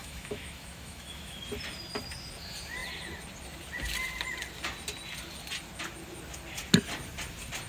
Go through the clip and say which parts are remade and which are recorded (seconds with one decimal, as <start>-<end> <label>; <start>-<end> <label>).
0.0-1.4 remade; 1.4-7.7 recorded